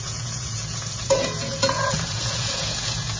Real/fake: fake